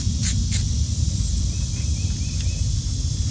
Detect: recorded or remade recorded